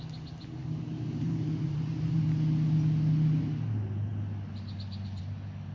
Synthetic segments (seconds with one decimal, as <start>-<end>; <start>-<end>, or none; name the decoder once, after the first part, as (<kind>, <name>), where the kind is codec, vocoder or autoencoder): 0.6-2.2 (vocoder, BigVGAN v2)